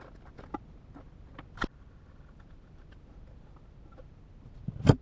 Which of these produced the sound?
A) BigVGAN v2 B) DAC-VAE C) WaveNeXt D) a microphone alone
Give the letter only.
D